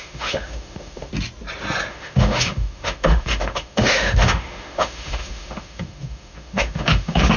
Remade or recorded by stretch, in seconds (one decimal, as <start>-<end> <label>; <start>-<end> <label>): 0.0-1.1 remade; 1.1-1.9 recorded; 1.9-7.4 remade